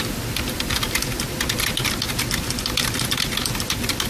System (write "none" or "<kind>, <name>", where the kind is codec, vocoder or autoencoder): none